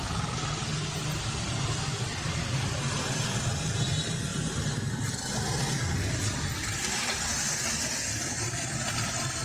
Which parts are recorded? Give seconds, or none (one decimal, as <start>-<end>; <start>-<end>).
0.0-6.9; 7.5-9.4